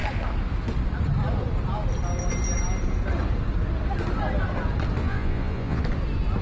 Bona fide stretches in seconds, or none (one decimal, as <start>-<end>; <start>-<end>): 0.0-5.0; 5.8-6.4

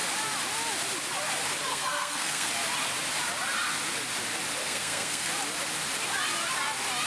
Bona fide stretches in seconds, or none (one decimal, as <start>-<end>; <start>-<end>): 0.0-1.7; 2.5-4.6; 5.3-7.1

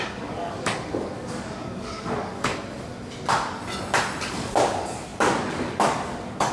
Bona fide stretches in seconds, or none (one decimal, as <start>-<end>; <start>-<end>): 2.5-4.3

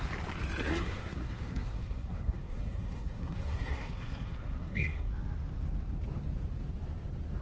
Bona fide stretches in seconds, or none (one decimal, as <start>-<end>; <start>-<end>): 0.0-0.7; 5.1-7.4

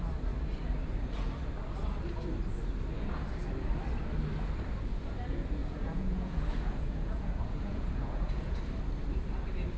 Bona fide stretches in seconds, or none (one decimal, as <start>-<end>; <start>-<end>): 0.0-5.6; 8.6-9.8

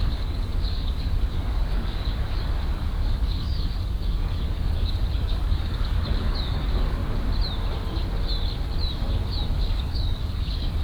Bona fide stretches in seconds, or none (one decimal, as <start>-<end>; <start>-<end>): 7.0-9.6